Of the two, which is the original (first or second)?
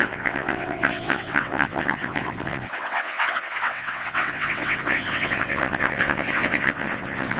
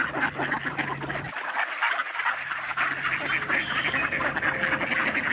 second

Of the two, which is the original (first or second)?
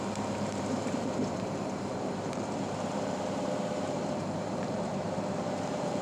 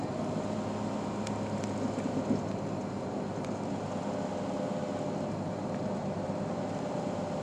second